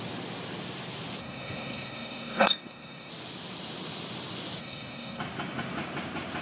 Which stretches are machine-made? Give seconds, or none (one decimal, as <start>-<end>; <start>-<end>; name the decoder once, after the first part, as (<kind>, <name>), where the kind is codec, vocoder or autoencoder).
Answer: 1.2-3.1 (codec, SNAC); 4.6-5.2

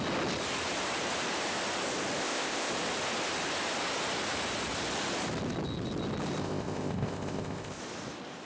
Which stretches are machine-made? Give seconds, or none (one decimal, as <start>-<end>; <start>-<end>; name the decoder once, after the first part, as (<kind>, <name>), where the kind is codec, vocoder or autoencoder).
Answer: 2.2-2.7 (codec, ZipCodec); 6.4-7.8

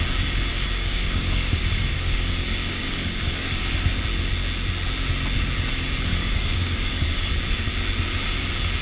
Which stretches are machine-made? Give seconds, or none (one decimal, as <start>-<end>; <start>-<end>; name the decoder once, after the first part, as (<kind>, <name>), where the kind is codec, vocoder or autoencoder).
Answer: 0.5-3.9 (codec, DAC); 6.1-7.3

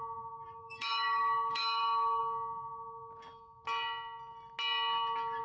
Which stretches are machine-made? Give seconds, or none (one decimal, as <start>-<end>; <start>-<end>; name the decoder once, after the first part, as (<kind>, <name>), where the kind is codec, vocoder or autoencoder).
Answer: 0.6-2.2 (autoencoder, DAC-VAE)